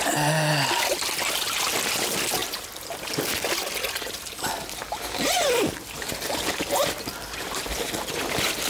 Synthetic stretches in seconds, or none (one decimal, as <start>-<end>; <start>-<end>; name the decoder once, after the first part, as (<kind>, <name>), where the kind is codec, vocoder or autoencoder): 2.4-3.0 (vocoder, BigVGAN v2)